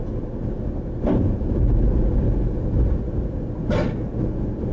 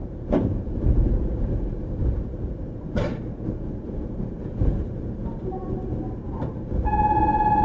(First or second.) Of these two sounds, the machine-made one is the second